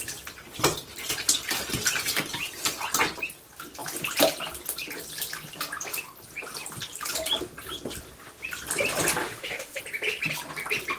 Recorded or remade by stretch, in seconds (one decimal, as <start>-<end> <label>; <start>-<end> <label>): 0.0-9.2 recorded; 9.2-9.8 remade; 9.8-11.0 recorded